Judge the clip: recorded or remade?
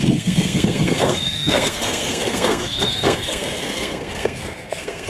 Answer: remade